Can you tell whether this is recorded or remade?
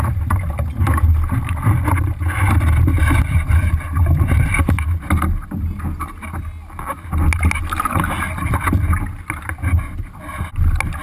recorded